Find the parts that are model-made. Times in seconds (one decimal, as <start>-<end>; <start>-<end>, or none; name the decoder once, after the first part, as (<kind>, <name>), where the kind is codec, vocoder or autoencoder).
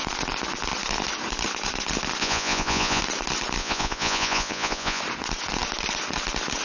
2.2-3.0 (vocoder, Vocos); 3.6-5.0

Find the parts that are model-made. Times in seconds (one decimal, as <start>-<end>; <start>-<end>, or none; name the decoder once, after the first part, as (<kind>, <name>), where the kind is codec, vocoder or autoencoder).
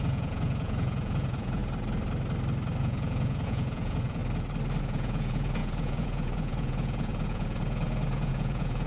0.0-1.6 (vocoder, Vocos); 2.8-4.2; 4.8-8.9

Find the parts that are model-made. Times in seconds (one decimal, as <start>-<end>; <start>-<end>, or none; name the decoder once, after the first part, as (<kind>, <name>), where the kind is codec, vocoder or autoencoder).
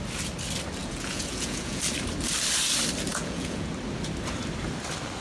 0.8-1.8 (vocoder, Vocos); 3.1-3.7